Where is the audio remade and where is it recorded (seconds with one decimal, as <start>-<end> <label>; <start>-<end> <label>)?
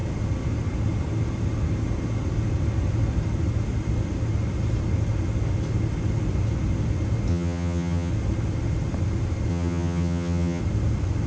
0.0-7.3 recorded; 7.3-8.1 remade; 8.1-9.5 recorded; 9.5-10.6 remade; 10.6-11.3 recorded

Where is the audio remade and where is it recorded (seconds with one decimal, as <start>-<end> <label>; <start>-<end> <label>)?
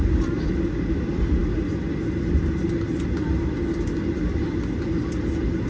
0.0-5.7 recorded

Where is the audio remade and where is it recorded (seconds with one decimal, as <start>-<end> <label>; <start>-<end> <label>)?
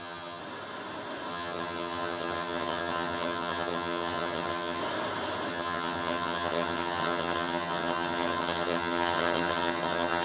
0.0-0.4 remade; 0.4-1.3 recorded; 1.3-4.8 remade; 4.8-5.5 recorded; 5.5-10.2 remade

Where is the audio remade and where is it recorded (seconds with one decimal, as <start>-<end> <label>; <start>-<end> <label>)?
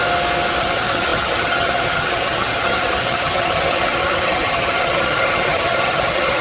0.0-0.6 recorded; 0.6-6.4 remade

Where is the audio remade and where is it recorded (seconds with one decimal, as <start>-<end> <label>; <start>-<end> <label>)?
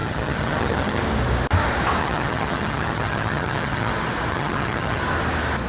0.0-1.0 remade; 1.0-2.0 recorded; 2.0-3.9 remade; 3.9-4.3 recorded; 4.3-5.0 remade; 5.0-5.7 recorded